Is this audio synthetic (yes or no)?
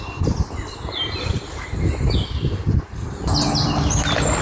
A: no